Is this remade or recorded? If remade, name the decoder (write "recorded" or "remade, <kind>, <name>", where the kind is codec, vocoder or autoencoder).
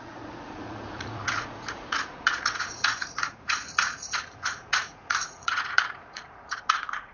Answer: remade, vocoder, Vocos